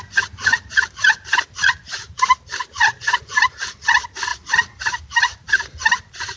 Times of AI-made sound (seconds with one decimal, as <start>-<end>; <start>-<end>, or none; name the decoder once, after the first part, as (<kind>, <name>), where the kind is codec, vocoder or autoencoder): 0.5-2.2 (vocoder, BigVGAN v2); 2.9-3.6; 4.3-5.5